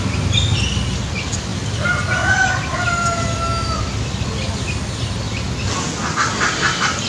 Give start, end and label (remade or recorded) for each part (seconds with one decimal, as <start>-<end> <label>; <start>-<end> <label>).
0.0-7.1 recorded